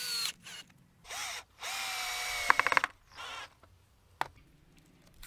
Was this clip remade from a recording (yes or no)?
no